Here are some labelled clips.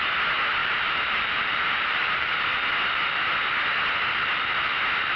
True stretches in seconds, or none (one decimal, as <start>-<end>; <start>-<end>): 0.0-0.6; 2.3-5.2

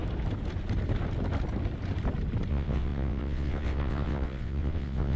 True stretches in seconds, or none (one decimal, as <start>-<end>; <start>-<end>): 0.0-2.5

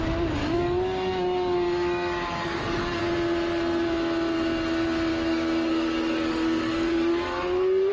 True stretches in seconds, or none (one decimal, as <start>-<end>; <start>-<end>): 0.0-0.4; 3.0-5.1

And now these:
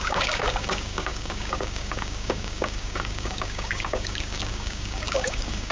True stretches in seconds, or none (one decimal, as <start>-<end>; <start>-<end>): none

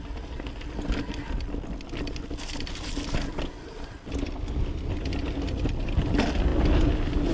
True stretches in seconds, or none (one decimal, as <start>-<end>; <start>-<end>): 0.0-7.3

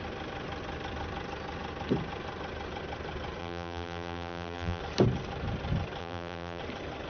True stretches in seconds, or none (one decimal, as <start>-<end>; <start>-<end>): 0.0-3.4; 4.8-6.0; 6.6-7.1

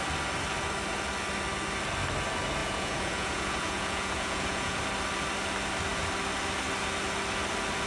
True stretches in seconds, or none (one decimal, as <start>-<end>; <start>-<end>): 0.0-2.6; 4.8-7.9

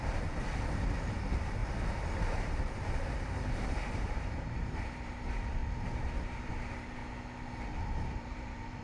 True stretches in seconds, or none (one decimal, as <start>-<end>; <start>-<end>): 5.6-6.5; 7.0-8.2